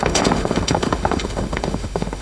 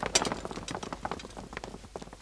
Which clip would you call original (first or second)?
second